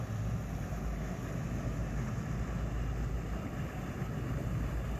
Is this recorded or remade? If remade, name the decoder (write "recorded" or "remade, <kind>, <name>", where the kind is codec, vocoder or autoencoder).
recorded